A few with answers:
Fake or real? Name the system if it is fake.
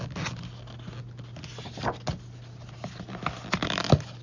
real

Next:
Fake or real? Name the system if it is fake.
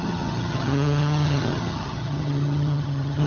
fake, vocoder, HiFi-GAN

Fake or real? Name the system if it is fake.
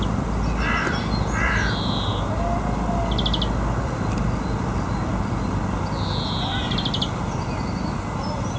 real